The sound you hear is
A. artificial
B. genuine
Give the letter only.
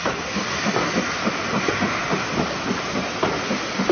B